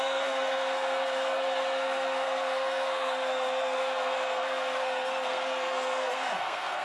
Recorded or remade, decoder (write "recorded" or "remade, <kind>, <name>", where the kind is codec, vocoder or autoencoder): remade, codec, SNAC